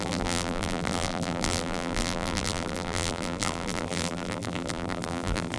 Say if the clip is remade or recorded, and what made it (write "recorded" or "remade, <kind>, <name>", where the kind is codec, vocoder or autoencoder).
remade, vocoder, BigVGAN v2